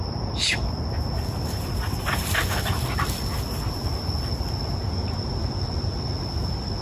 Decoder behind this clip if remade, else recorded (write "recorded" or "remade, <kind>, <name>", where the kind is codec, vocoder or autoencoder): recorded